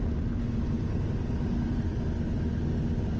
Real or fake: real